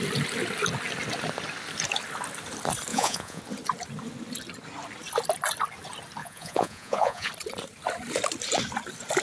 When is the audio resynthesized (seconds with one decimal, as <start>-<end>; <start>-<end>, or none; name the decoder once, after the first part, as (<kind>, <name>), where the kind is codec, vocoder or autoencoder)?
2.9-3.4 (vocoder, Vocos); 6.2-7.3